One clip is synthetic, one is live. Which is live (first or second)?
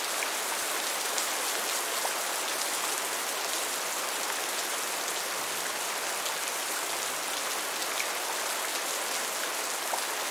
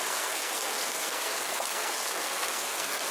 first